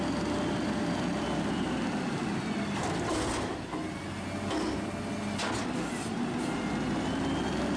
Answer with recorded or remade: recorded